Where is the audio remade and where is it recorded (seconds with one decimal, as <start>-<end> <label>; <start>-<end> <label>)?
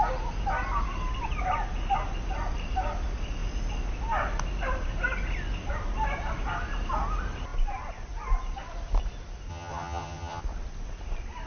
0.0-9.5 recorded; 9.5-10.4 remade; 10.4-11.5 recorded